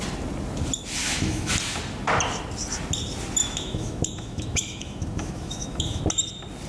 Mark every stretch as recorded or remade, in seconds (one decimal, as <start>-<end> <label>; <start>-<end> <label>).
0.0-1.0 recorded; 1.0-1.5 remade; 1.5-3.4 recorded; 3.4-6.0 remade; 6.0-6.7 recorded